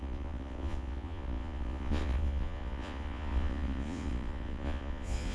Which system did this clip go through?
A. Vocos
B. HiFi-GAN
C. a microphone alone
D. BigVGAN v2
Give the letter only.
A